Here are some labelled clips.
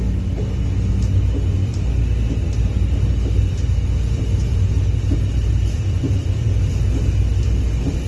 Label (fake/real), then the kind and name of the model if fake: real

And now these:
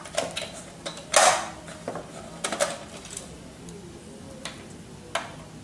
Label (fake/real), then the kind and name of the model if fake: real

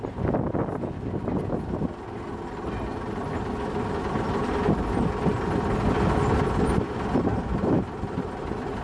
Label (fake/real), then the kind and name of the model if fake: real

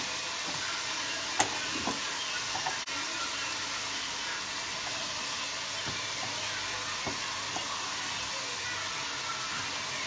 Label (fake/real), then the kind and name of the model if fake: real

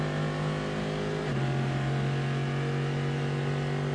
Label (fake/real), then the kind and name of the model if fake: real